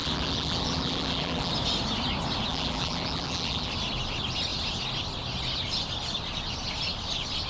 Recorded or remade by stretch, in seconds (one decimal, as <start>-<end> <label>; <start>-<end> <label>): 0.0-1.5 remade; 1.5-2.5 recorded; 2.5-3.7 remade; 3.7-7.5 recorded

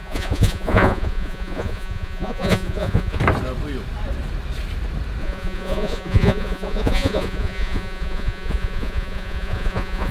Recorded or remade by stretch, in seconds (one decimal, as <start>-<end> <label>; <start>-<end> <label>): 0.0-3.2 remade; 3.2-5.2 recorded; 5.2-10.1 remade

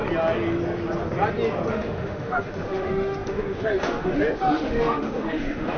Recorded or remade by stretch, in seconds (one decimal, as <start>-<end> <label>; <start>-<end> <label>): 0.0-1.7 recorded; 1.7-5.8 remade

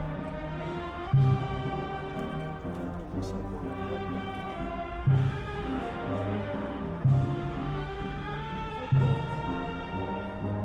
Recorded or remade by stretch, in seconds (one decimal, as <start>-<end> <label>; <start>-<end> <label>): 0.0-0.6 recorded; 0.6-1.4 remade; 1.4-5.0 recorded; 5.0-8.7 remade; 8.7-10.6 recorded